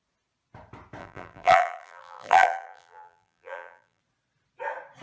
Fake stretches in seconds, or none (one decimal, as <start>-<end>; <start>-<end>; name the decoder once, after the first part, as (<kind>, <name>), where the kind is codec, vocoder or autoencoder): 1.0-4.0 (vocoder, BigVGAN v2)